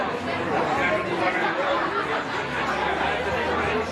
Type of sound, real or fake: fake